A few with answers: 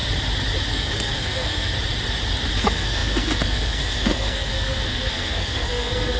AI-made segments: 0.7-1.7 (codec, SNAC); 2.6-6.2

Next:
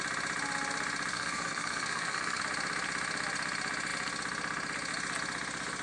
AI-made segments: 1.1-2.4 (codec, SNAC)

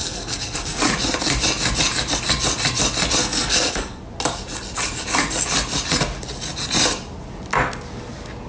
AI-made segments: 0.0-0.8 (codec, SNAC); 3.2-4.0

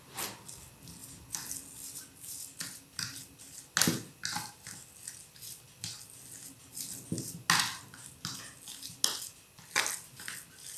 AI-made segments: none

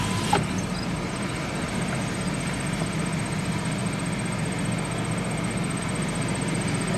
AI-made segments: none

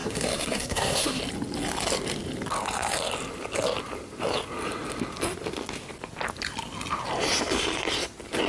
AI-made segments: 0.0-1.2 (codec, SNAC)

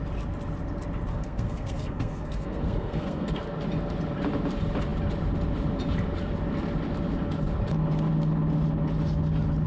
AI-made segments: 1.1-3.4 (codec, SNAC)